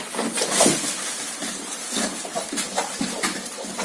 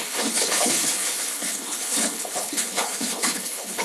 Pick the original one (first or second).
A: first